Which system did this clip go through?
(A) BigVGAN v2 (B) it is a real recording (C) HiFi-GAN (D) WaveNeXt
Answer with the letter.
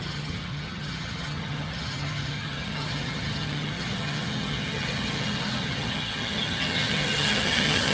C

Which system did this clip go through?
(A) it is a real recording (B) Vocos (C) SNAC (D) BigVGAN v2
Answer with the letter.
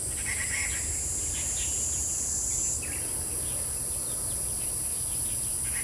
A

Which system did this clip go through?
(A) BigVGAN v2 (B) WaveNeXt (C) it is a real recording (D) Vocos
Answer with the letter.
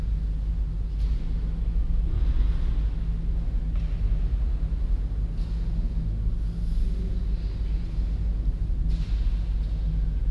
C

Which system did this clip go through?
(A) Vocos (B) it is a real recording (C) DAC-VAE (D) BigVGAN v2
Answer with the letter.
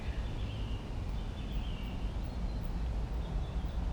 B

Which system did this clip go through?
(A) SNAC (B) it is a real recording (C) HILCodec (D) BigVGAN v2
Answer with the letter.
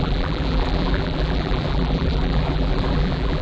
D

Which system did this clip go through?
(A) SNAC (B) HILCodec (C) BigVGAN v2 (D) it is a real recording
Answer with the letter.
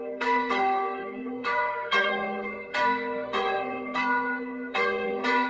A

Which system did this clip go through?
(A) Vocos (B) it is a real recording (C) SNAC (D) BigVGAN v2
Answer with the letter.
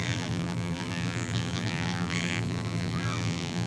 D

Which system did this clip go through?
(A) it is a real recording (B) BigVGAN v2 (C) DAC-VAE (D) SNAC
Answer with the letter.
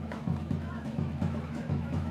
C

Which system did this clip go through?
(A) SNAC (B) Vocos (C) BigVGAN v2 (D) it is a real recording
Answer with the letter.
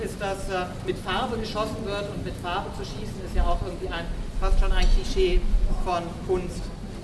D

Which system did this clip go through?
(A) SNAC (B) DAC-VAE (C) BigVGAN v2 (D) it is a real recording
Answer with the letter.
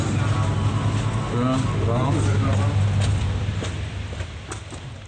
D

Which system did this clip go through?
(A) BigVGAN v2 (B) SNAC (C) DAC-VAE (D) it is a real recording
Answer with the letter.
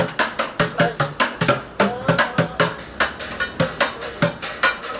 D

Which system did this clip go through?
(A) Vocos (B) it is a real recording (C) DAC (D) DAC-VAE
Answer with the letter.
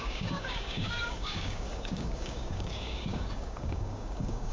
C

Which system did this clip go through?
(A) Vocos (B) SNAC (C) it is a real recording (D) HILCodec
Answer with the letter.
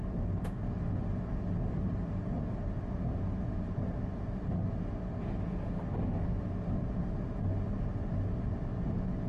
C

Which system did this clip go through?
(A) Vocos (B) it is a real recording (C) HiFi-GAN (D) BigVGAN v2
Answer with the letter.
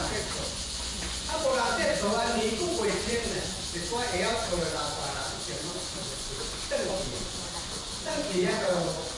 A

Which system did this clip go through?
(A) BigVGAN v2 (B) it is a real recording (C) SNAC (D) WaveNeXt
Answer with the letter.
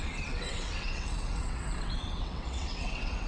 D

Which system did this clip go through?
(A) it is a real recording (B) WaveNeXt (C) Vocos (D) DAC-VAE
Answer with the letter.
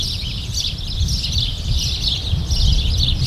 A